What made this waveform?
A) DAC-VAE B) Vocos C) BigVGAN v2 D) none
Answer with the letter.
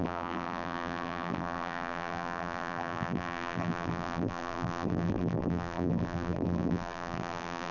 C